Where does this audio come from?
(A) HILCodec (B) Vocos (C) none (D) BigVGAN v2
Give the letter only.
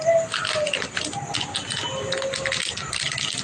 C